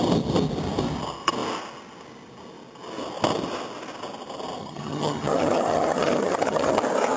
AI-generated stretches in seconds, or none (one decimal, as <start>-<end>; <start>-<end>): 4.6-6.8